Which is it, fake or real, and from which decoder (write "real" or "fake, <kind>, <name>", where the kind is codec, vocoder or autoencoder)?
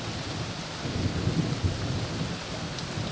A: real